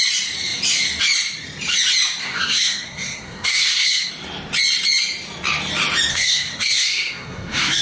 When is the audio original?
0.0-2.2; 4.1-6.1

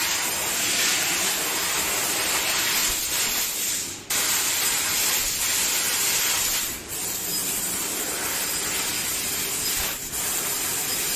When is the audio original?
0.0-11.2

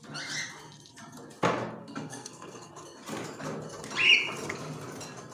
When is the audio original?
0.0-1.8; 2.7-5.3

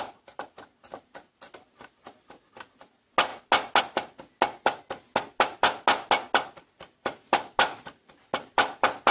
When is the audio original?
0.0-9.1

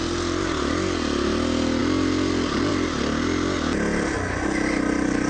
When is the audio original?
0.0-5.3

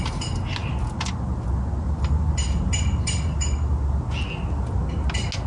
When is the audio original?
0.0-5.5

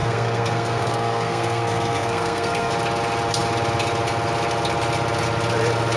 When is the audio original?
2.7-6.0

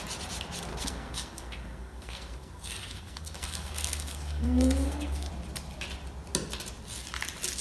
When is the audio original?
0.0-0.7; 5.3-7.6